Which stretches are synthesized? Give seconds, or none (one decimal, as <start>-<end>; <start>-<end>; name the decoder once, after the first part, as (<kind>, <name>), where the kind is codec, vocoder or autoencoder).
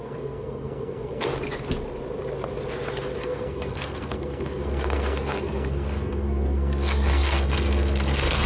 0.0-1.3 (codec, SNAC); 3.2-8.5